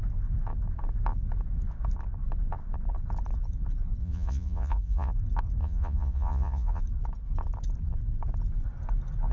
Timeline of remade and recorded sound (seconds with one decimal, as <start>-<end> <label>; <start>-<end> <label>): 0.0-4.0 recorded; 4.0-5.1 remade; 5.1-5.6 recorded; 5.6-6.8 remade; 6.8-9.3 recorded